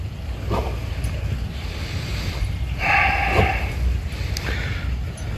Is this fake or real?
real